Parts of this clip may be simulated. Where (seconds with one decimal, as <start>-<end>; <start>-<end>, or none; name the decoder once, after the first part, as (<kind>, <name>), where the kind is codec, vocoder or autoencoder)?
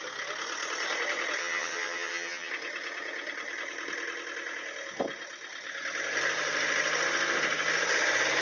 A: 1.4-2.5 (vocoder, HiFi-GAN)